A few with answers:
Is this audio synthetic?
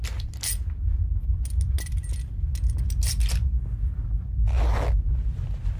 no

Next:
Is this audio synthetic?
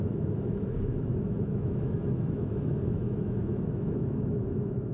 yes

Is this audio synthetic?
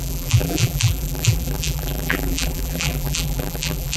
yes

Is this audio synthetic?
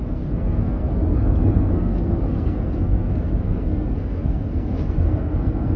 yes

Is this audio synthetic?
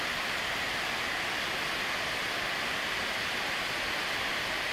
no